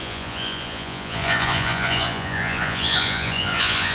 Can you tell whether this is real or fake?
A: fake